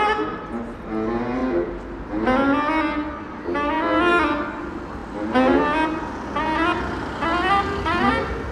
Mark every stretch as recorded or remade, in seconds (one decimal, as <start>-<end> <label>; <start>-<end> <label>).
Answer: 0.0-8.5 recorded